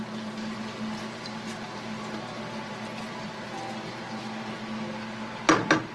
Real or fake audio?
real